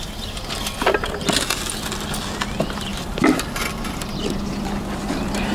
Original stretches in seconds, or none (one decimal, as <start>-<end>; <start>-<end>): 0.0-2.9; 3.7-5.5